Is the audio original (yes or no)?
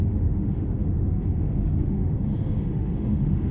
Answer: no